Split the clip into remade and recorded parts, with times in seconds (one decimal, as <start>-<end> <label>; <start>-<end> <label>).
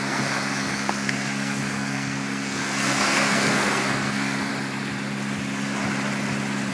0.0-4.5 remade; 4.5-6.7 recorded